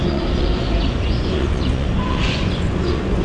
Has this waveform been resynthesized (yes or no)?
yes